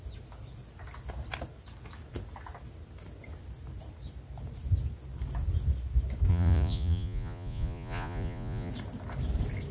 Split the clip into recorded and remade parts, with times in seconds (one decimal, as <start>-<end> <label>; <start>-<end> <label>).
0.0-6.3 recorded; 6.3-8.7 remade; 8.7-9.7 recorded